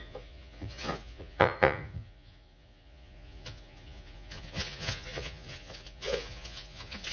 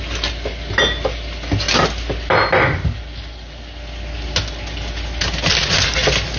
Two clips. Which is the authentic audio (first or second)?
second